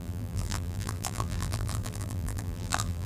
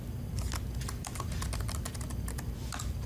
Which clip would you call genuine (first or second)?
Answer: second